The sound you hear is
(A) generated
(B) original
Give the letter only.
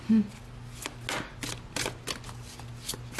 B